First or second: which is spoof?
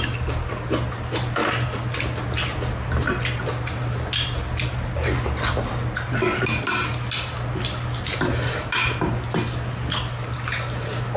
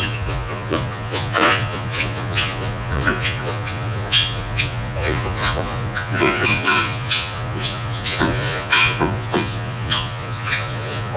second